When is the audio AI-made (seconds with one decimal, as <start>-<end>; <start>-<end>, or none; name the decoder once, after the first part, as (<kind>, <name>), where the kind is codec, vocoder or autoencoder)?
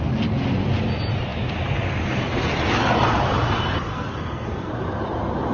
3.9-4.7 (codec, SNAC)